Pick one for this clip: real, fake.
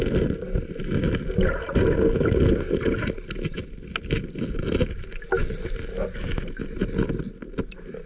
real